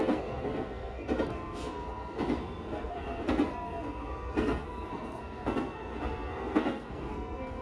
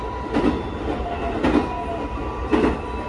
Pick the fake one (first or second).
first